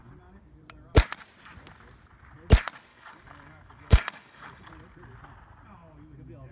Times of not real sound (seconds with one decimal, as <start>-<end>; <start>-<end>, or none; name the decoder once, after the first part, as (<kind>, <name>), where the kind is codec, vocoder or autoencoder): 2.9-4.7 (codec, DAC)